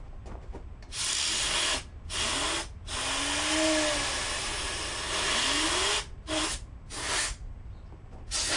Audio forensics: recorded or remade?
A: recorded